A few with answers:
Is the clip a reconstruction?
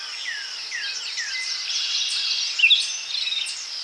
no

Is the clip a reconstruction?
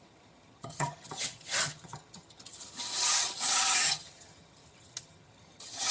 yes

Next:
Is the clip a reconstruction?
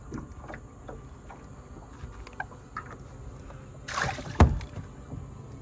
no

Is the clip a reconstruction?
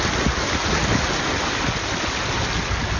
no